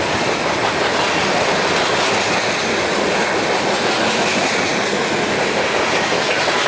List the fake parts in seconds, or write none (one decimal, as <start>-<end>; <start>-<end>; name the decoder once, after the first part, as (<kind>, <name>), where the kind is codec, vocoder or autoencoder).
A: none

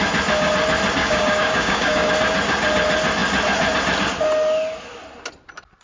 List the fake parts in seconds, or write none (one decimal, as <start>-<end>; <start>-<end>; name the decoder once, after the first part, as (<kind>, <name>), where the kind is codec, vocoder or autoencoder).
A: 1.0-2.1 (codec, DAC)